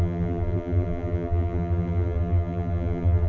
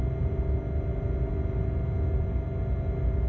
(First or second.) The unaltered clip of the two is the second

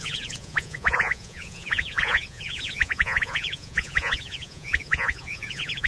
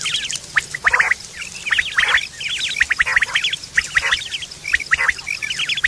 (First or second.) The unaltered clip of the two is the second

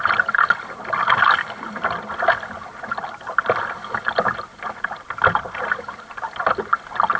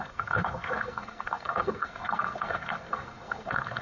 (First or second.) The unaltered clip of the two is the first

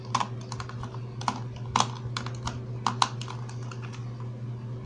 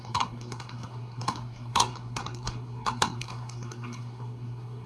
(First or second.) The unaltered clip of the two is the first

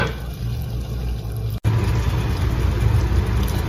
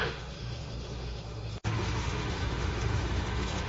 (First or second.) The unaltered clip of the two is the first